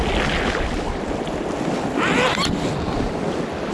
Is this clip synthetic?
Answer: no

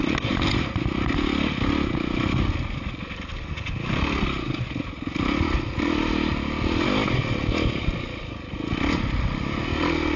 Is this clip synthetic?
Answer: no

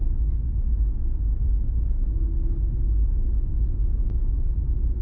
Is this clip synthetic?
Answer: no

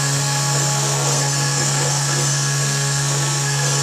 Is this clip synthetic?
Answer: yes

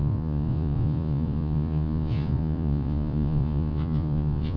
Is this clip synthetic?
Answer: yes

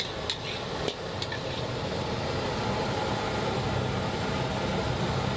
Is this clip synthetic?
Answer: no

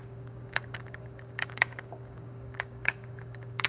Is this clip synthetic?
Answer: yes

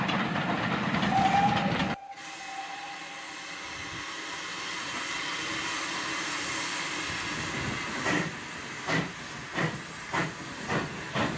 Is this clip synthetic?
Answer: no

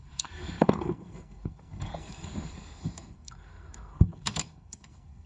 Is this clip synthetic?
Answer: yes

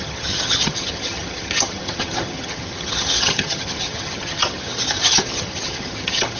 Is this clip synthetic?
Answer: yes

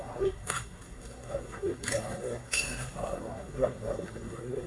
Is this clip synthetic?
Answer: yes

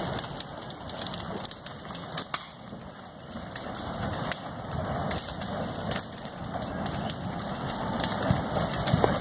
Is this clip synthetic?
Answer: no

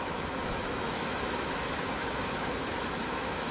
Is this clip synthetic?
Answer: yes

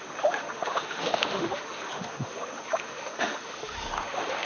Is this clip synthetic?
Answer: yes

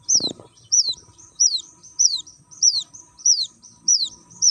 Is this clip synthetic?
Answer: yes